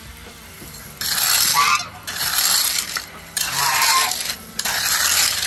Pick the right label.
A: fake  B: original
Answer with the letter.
A